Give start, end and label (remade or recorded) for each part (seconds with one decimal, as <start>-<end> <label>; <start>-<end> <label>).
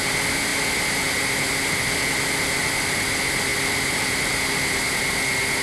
0.0-5.6 recorded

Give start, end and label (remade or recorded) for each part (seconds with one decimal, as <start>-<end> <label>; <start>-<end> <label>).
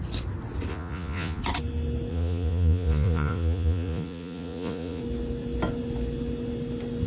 0.0-0.7 recorded; 0.7-1.4 remade; 1.4-2.1 recorded; 2.1-5.0 remade; 5.0-7.1 recorded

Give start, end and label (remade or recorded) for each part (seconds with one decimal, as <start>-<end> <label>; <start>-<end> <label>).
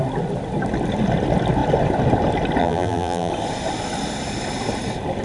0.0-2.6 recorded; 2.6-3.3 remade; 3.3-5.2 recorded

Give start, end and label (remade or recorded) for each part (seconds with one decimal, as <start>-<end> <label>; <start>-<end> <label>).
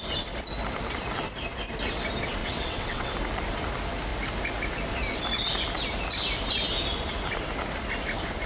0.0-2.4 recorded; 2.4-3.1 remade; 3.1-8.5 recorded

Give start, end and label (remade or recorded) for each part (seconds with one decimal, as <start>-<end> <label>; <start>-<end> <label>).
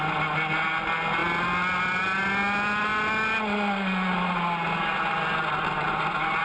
0.0-6.4 recorded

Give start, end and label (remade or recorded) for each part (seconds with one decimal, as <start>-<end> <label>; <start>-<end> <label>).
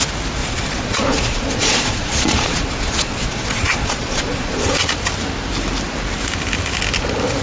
0.0-0.4 recorded; 0.4-4.8 remade; 4.8-7.4 recorded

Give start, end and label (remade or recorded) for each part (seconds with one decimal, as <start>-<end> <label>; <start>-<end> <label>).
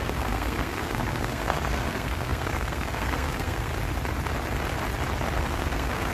0.0-3.7 remade; 3.7-5.4 recorded; 5.4-6.1 remade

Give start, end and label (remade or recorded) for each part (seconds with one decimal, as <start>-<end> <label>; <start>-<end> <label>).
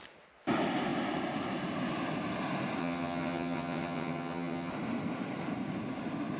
0.0-2.8 recorded; 2.8-4.7 remade; 4.7-6.4 recorded